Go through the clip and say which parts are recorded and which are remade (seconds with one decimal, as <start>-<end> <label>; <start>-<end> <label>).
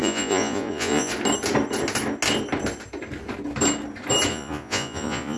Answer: 0.0-1.1 remade; 1.1-4.3 recorded; 4.3-5.4 remade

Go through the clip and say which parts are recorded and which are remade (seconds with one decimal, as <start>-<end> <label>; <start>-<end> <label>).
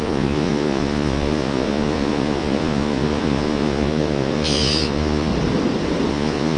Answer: 0.0-5.3 remade; 5.3-6.1 recorded; 6.1-6.6 remade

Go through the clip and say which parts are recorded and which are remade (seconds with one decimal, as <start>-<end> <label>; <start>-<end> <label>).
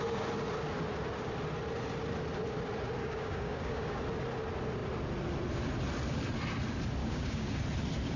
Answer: 0.0-3.0 recorded; 3.0-4.0 remade; 4.0-7.0 recorded; 7.0-7.6 remade; 7.6-8.2 recorded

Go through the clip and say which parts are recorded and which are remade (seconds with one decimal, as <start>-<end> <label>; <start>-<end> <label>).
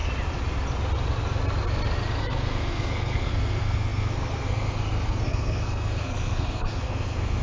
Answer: 0.0-2.2 recorded; 2.2-7.4 remade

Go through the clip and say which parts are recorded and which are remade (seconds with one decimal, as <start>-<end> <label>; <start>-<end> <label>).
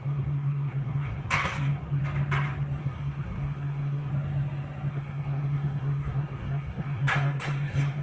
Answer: 0.0-2.0 remade; 2.0-2.8 recorded; 2.8-4.1 remade; 4.1-4.9 recorded; 4.9-8.0 remade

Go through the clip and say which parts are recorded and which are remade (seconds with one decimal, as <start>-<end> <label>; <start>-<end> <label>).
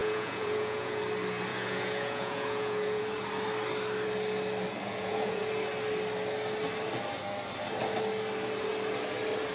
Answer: 0.0-1.0 remade; 1.0-1.5 recorded; 1.5-3.0 remade; 3.0-4.8 recorded; 4.8-5.4 remade; 5.4-9.5 recorded